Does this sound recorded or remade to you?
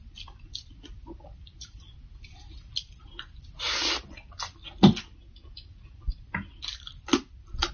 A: recorded